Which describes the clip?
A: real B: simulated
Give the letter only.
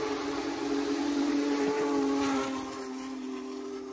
A